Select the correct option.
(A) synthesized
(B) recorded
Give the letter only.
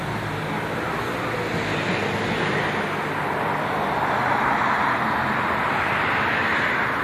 B